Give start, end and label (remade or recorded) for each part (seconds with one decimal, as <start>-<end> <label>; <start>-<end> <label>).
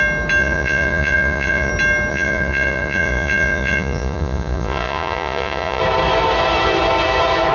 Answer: 0.0-0.4 recorded; 0.4-1.7 remade; 1.7-2.1 recorded; 2.1-5.8 remade; 5.8-7.5 recorded